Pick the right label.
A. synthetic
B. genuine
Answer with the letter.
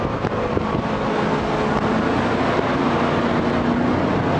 B